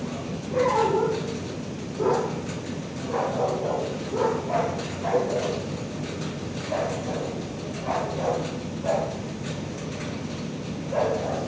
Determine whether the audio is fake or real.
real